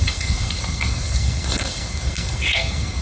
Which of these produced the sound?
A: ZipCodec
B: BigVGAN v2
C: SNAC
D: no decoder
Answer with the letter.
C